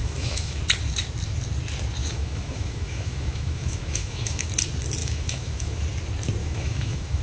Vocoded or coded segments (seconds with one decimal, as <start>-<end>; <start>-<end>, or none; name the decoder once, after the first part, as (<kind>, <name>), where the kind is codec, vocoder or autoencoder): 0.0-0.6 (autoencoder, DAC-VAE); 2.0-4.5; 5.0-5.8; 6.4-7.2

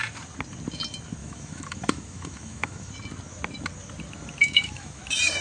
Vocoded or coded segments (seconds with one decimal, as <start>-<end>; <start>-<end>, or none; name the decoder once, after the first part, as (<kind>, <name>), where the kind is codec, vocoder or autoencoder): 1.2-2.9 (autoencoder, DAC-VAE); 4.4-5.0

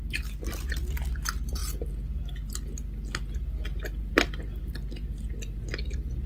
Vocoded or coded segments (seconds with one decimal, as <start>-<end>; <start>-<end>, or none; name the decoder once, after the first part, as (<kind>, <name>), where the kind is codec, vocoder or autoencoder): none

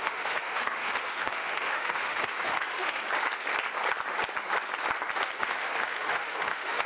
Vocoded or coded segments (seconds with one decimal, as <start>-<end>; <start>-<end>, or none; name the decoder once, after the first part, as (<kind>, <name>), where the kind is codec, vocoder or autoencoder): 0.0-3.0 (autoencoder, DAC-VAE); 5.4-6.9

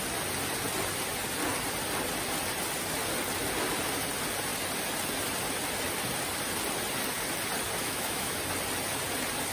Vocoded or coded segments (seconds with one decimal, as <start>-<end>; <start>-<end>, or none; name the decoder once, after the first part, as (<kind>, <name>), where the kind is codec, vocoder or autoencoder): 7.8-8.3 (autoencoder, DAC-VAE)

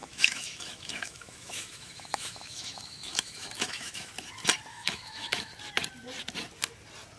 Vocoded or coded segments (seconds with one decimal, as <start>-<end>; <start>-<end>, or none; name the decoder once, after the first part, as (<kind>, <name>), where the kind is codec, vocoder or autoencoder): 0.0-4.1 (autoencoder, DAC-VAE); 4.7-5.5